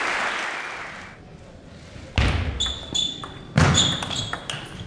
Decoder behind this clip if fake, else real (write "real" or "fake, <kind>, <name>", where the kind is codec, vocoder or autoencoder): real